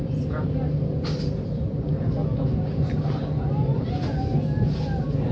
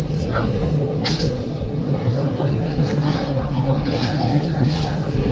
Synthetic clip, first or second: second